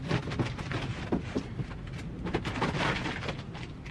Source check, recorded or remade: recorded